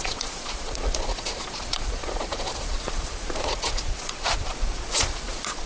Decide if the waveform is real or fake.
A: fake